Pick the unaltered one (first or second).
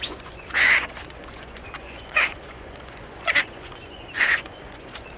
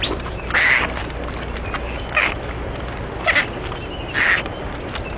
second